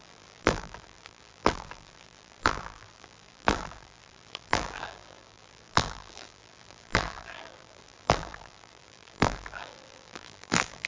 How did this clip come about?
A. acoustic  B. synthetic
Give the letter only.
B